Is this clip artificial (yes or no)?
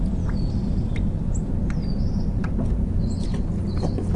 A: no